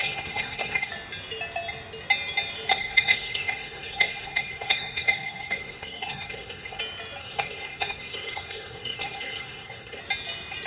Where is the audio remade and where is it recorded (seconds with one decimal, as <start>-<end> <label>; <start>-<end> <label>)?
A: 0.0-0.9 remade; 0.9-2.7 recorded; 2.7-6.8 remade; 6.8-7.2 recorded; 7.2-10.0 remade; 10.0-10.7 recorded